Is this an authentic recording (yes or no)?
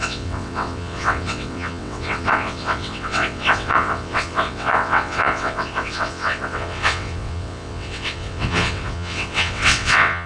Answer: no